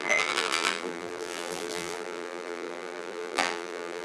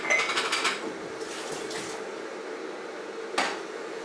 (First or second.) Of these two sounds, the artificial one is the first